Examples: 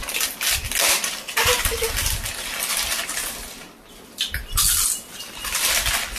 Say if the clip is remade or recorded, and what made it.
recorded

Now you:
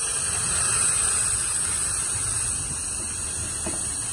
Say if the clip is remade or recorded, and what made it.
recorded